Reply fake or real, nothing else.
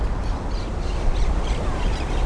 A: fake